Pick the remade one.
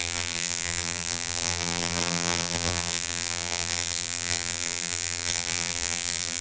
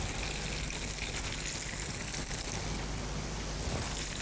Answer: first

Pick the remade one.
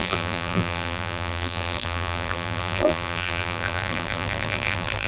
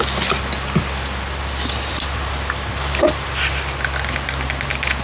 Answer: first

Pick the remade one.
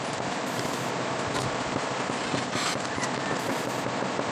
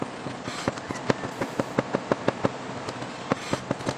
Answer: first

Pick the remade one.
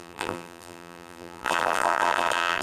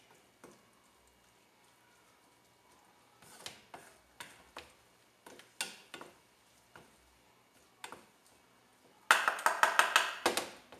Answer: first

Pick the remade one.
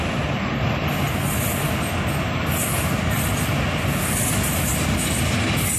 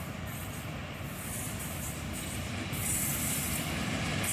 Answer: second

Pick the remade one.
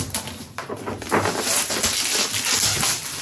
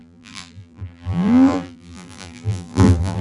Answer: second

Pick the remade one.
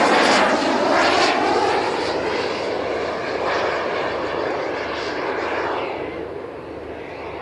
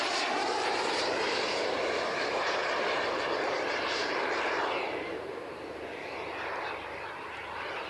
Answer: second